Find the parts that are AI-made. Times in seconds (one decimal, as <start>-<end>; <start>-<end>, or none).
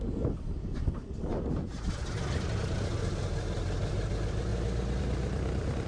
0.0-1.3; 3.1-4.5; 5.0-5.9